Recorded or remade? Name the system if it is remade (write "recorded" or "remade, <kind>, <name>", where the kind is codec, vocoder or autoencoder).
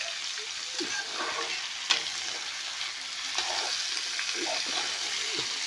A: recorded